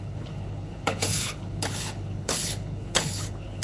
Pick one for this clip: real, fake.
fake